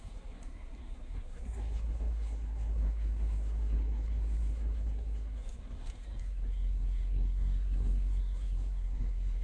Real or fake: fake